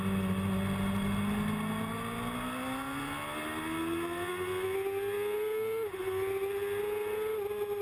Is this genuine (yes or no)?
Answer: yes